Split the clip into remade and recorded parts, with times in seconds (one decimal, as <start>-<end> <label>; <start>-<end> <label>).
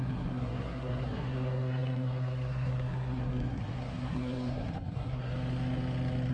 0.0-5.3 remade; 5.3-6.3 recorded